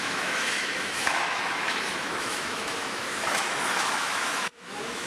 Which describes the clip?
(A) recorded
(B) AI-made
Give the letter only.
B